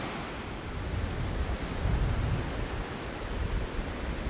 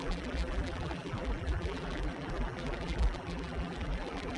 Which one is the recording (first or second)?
first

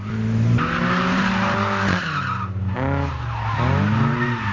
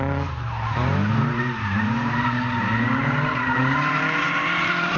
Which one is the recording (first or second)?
first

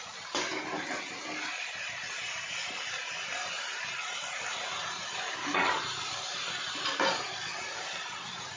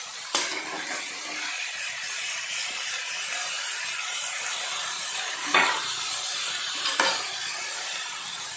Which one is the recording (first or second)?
first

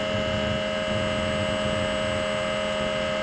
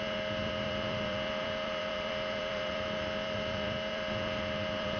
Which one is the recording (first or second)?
first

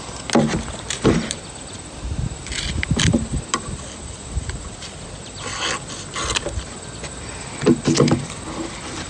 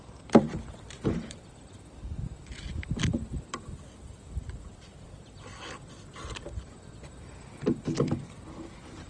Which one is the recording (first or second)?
first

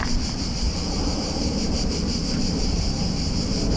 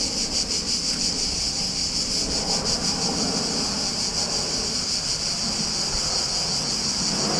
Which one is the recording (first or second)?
second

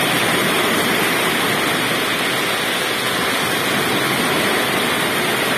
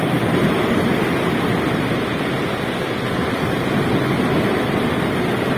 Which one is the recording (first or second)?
first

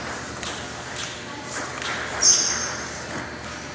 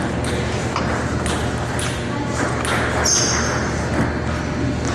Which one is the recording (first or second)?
second